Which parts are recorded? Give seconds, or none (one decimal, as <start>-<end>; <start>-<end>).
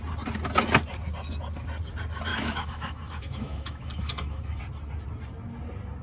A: 0.0-2.3; 4.6-6.0